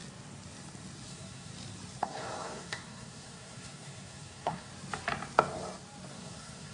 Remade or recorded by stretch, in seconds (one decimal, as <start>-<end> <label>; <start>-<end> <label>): 0.0-1.1 recorded; 1.1-1.5 remade; 1.5-2.0 recorded; 2.0-4.7 remade; 4.7-6.1 recorded; 6.1-6.7 remade